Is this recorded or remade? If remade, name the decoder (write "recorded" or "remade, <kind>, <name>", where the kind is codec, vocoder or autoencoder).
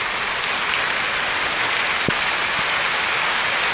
recorded